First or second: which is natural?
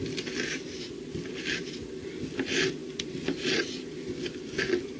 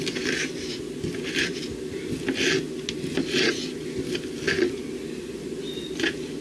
second